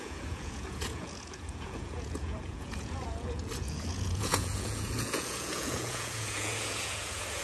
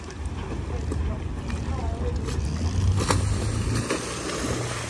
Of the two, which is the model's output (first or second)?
first